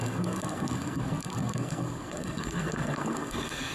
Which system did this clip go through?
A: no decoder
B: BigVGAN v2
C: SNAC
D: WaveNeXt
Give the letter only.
C